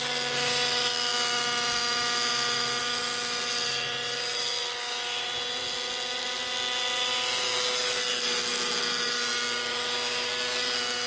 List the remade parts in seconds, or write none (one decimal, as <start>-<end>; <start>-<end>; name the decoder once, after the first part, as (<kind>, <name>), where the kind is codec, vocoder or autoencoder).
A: none